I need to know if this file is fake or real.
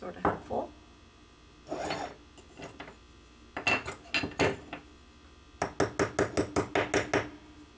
real